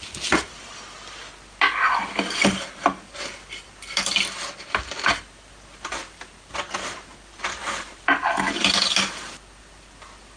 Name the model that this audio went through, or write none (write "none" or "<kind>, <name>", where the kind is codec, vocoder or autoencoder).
none